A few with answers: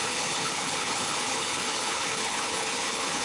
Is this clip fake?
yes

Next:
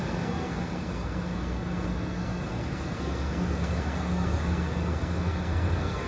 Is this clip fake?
yes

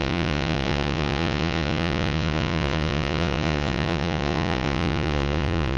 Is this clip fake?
yes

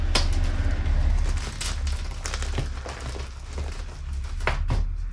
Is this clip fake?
no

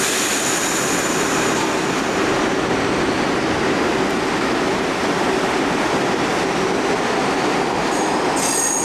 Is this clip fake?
no